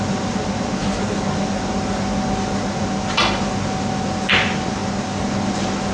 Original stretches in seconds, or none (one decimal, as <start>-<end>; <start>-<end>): 0.0-5.9